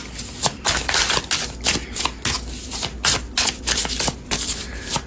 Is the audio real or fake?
real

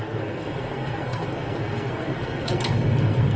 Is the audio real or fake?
fake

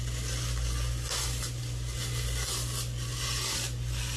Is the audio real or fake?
real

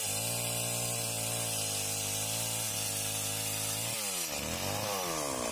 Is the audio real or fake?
real